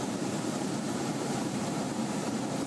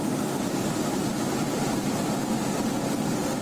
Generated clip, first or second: first